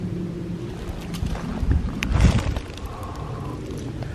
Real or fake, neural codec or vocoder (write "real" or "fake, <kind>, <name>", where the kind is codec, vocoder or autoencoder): real